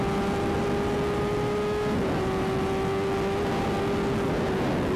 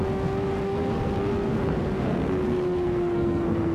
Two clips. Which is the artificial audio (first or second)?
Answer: second